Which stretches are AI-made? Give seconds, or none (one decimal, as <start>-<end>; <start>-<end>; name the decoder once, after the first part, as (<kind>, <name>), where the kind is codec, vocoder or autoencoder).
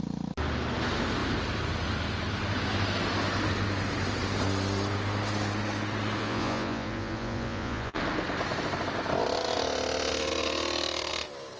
6.2-8.0 (vocoder, Vocos)